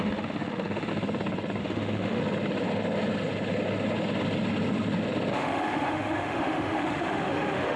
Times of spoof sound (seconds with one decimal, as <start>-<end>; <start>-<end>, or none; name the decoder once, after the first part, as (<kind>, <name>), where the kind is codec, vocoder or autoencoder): 0.0-0.9 (autoencoder, DAC-VAE); 1.6-2.2; 5.3-7.8